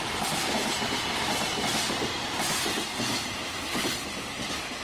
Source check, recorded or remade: recorded